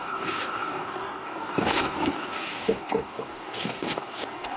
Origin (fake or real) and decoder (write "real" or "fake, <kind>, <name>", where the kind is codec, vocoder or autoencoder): fake, codec, DAC